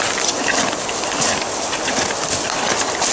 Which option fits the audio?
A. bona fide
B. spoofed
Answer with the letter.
A